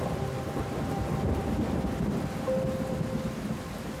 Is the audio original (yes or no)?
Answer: no